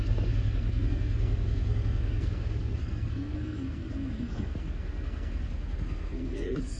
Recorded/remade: remade